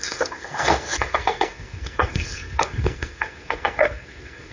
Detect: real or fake fake